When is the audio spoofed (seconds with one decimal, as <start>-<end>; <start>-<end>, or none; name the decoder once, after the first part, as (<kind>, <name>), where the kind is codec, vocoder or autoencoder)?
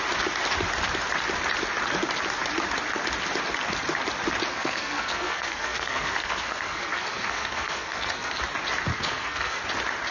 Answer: 4.5-8.4 (codec, SNAC); 8.9-9.6